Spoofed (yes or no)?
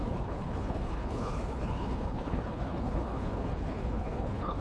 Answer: yes